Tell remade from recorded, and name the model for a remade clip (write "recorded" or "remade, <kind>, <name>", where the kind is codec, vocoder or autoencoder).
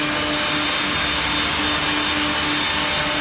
recorded